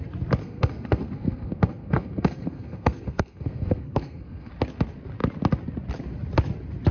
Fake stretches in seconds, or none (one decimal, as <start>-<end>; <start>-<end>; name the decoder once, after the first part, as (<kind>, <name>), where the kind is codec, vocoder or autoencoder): 0.4-4.5 (codec, SNAC)